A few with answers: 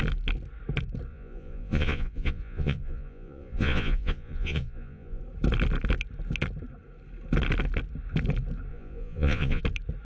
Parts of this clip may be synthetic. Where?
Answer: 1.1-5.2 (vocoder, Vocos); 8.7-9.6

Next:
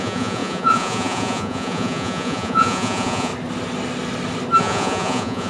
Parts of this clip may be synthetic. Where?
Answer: 0.0-3.3 (vocoder, Vocos); 4.6-5.5

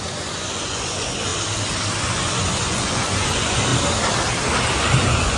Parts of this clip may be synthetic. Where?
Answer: 0.0-1.3 (vocoder, Vocos); 2.0-3.7; 4.7-5.4

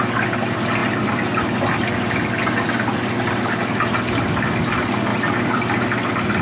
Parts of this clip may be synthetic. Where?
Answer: none

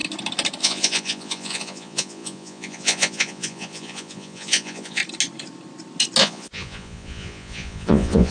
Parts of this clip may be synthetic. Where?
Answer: 0.6-5.0 (vocoder, Vocos); 6.2-8.3

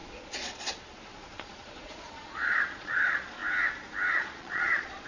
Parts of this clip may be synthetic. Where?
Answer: 0.0-3.4 (vocoder, Vocos); 4.1-5.1

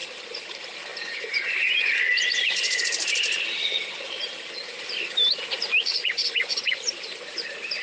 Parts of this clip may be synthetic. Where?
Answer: 0.9-2.8 (vocoder, Vocos); 5.9-6.8

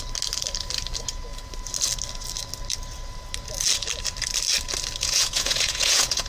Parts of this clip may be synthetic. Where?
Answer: 5.0-6.3 (vocoder, Vocos)